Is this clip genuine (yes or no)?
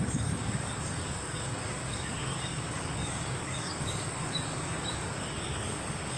no